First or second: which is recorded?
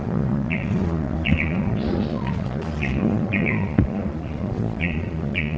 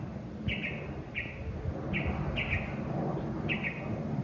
second